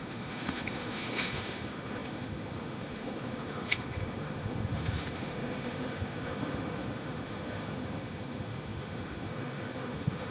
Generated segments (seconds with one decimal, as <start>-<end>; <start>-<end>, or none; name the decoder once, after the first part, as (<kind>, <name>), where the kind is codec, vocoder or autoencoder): 0.0-10.3 (autoencoder, DAC-VAE)